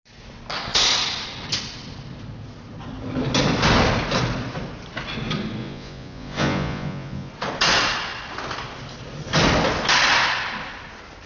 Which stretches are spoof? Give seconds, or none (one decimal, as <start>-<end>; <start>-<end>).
5.6-7.3